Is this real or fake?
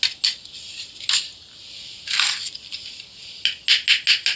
real